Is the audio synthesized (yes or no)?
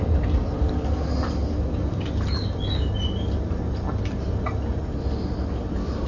no